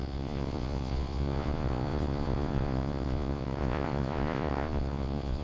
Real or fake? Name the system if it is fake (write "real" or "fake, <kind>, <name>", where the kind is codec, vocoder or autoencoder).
fake, vocoder, Vocos